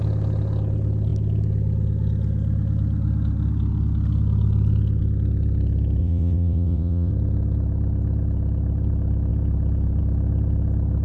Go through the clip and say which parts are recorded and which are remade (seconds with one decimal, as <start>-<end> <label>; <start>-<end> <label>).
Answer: 0.0-6.0 recorded; 6.0-7.1 remade; 7.1-11.0 recorded